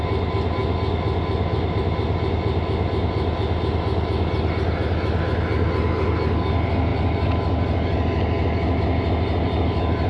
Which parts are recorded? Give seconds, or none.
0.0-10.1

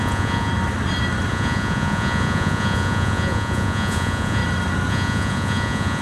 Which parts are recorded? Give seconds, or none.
0.5-1.3; 4.4-4.9

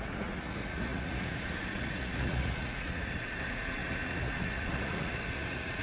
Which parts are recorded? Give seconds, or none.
none

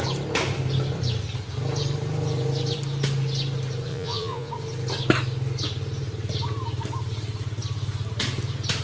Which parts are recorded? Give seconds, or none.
0.0-3.9; 4.5-8.8